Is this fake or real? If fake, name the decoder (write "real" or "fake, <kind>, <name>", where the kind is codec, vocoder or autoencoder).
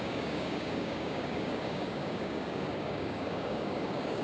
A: fake, codec, DAC